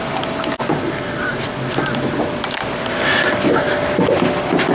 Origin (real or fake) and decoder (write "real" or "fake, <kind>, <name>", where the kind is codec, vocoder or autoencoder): real